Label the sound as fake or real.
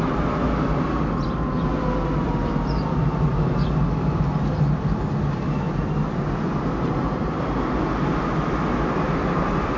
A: real